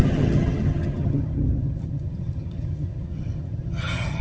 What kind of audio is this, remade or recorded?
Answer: remade